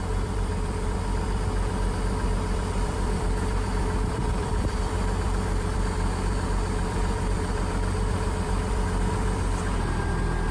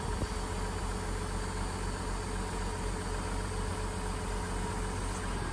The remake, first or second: first